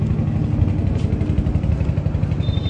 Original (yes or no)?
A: yes